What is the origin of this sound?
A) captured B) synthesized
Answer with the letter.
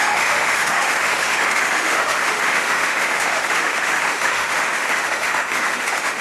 B